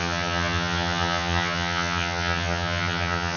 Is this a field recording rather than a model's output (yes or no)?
no